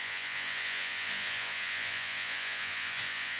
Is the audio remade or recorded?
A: remade